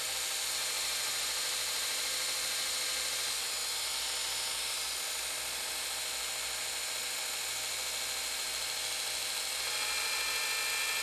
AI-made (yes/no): no